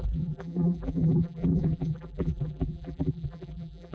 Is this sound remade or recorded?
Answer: remade